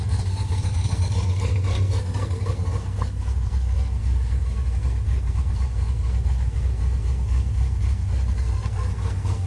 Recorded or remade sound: remade